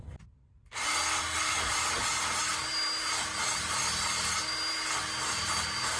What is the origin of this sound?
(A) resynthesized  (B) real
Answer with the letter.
B